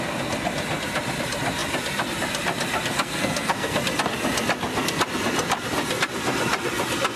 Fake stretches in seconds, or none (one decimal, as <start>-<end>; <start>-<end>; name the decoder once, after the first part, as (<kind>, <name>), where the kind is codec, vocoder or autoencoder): 2.9-3.8 (codec, SNAC)